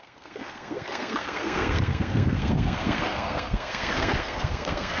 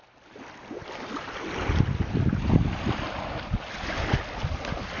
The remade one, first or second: first